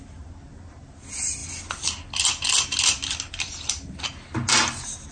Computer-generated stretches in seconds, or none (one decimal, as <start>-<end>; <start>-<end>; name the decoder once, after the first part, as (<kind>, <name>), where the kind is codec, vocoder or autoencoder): none